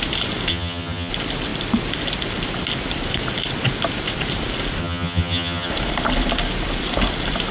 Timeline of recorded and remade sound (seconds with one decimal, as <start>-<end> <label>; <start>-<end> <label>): 0.0-0.5 recorded; 0.5-1.1 remade; 1.1-4.8 recorded; 4.8-5.7 remade; 5.7-7.5 recorded